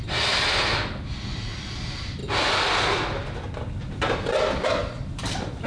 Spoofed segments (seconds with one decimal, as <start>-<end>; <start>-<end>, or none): none